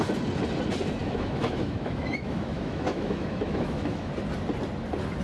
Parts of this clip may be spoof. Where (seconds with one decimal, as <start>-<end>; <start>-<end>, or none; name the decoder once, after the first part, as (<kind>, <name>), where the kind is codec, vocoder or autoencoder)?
1.0-4.1 (autoencoder, DAC-VAE)